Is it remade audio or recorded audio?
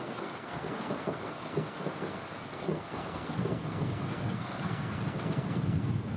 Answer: remade